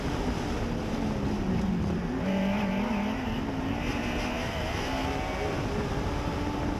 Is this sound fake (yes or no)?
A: no